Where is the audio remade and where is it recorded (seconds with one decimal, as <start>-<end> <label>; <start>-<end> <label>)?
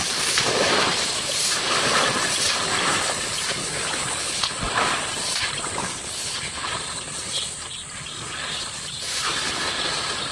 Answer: 0.0-3.6 recorded; 3.6-4.4 remade; 4.4-5.8 recorded; 5.8-6.7 remade; 6.7-10.3 recorded